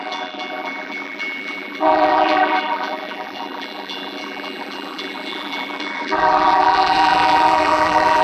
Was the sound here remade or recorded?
remade